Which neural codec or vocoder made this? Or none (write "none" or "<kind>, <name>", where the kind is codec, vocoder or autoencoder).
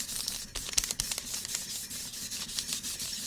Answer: none